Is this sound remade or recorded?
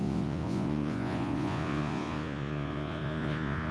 remade